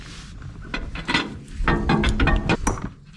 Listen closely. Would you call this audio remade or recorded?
recorded